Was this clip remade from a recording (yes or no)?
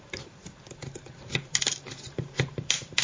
yes